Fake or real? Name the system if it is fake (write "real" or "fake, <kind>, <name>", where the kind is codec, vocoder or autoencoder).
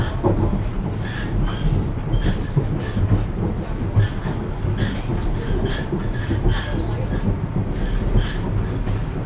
real